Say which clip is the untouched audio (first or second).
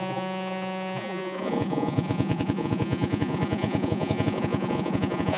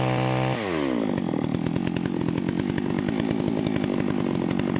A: second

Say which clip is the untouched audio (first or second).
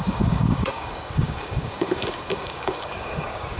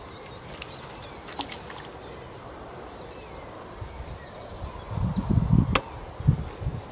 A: second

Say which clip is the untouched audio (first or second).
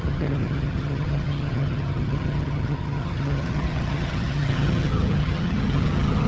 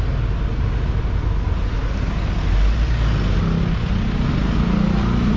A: second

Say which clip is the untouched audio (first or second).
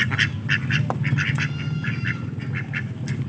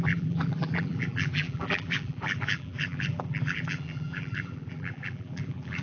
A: first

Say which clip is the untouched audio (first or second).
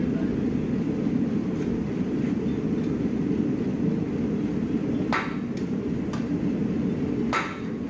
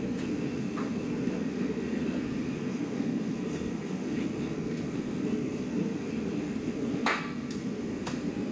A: first